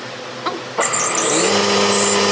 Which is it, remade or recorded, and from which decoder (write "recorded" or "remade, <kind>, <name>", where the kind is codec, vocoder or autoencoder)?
recorded